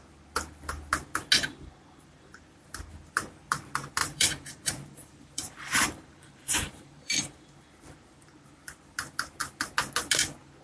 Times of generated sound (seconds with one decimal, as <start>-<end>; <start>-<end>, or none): 4.0-7.4